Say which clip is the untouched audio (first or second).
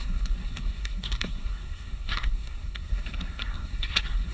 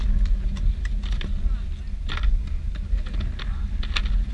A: second